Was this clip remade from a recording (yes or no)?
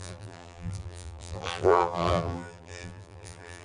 yes